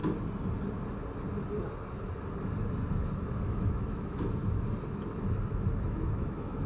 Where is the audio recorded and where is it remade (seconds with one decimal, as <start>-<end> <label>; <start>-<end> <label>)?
0.0-2.9 recorded; 2.9-4.4 remade; 4.4-5.5 recorded; 5.5-6.7 remade